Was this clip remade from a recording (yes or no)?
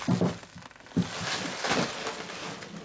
no